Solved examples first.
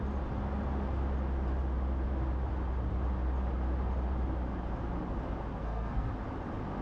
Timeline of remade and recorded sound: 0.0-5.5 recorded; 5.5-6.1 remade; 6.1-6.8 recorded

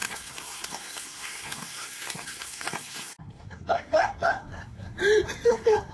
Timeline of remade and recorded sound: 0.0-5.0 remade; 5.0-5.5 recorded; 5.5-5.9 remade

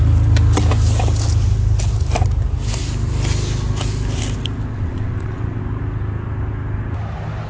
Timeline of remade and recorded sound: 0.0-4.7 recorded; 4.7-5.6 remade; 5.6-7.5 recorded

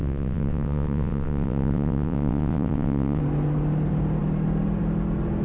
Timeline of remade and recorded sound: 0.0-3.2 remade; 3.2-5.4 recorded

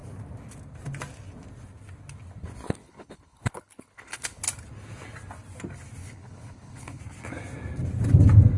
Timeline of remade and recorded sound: 0.0-2.8 recorded; 2.8-4.4 remade; 4.4-6.0 recorded; 6.0-7.0 remade; 7.0-8.6 recorded

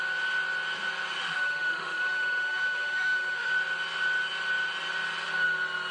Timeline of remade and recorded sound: 0.0-1.2 recorded; 1.2-3.5 remade; 3.5-5.9 recorded

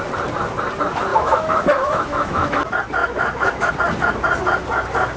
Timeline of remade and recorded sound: 0.0-1.1 recorded; 1.1-2.6 remade; 2.6-3.0 recorded; 3.0-3.7 remade; 3.7-5.2 recorded

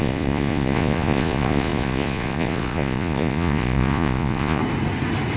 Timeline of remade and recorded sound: 0.0-4.6 remade; 4.6-5.4 recorded